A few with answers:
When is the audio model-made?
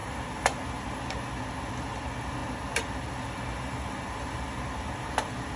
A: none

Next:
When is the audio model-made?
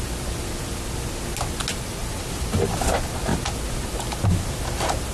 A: 2.0-2.7 (vocoder, BigVGAN v2)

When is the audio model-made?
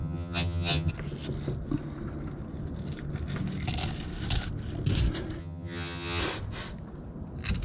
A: 0.0-0.9 (vocoder, HiFi-GAN); 5.4-6.2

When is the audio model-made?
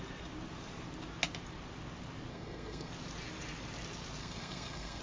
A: 2.3-2.9 (codec, SNAC); 4.2-5.0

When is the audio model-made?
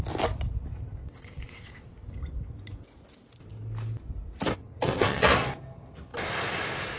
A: 1.0-1.9 (vocoder, WaveNeXt); 4.6-5.3